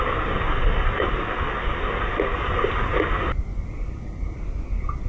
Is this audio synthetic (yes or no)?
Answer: no